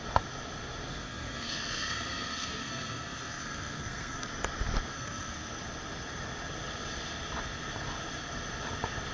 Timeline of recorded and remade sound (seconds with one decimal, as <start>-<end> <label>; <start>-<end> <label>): 0.0-0.9 recorded; 0.9-4.3 remade; 4.3-4.9 recorded; 4.9-5.5 remade; 5.5-9.1 recorded